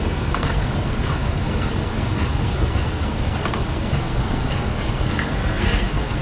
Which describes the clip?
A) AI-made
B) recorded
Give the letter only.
A